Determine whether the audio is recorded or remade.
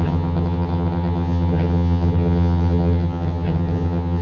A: remade